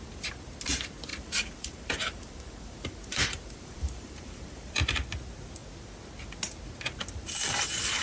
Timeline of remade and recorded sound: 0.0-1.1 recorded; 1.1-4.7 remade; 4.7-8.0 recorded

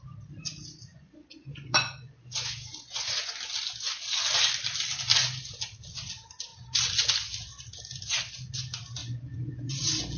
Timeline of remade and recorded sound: 0.0-0.9 recorded; 0.9-3.3 remade; 3.3-9.0 recorded; 9.0-9.7 remade; 9.7-10.2 recorded

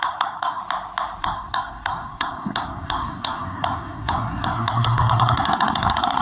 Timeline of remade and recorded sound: 0.0-0.6 remade; 0.6-1.2 recorded; 1.2-6.2 remade

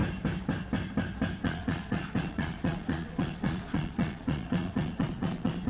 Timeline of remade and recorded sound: 0.0-1.4 recorded; 1.4-5.7 remade

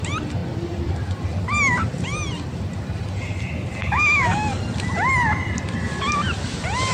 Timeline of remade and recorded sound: 0.0-3.8 recorded; 3.8-4.6 remade; 4.6-6.9 recorded

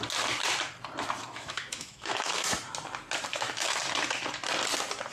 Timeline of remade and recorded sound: 0.0-1.2 recorded; 1.2-2.5 remade; 2.5-3.3 recorded; 3.3-3.8 remade; 3.8-5.1 recorded

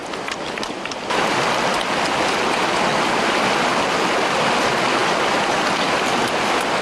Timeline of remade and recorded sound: 0.0-6.8 recorded

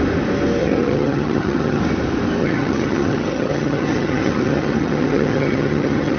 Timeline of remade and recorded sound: 0.0-0.6 recorded; 0.6-1.8 remade; 1.8-2.4 recorded; 2.4-6.2 remade